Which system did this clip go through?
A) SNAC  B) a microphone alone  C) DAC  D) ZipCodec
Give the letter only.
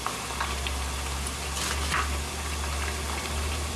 B